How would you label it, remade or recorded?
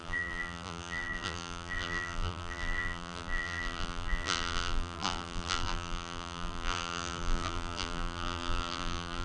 remade